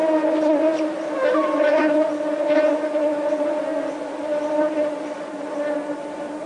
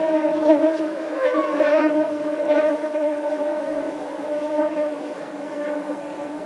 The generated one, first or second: second